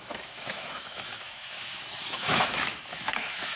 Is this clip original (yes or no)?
no